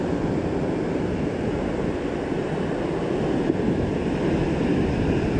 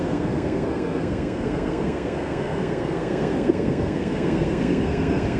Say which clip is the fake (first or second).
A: second